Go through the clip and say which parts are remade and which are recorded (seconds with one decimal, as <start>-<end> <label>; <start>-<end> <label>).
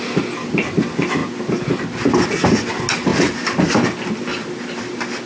0.0-5.3 recorded